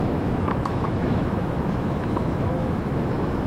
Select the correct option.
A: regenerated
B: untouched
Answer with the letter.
A